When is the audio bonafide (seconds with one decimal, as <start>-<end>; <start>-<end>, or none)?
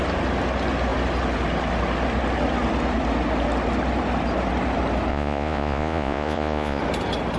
0.0-5.1; 6.8-7.4